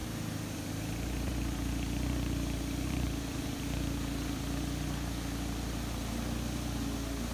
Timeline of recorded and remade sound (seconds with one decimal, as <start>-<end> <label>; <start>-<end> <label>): 0.0-4.4 remade; 4.4-7.3 recorded